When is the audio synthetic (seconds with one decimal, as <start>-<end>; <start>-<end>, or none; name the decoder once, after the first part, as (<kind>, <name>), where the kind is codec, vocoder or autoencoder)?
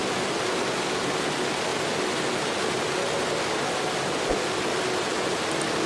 none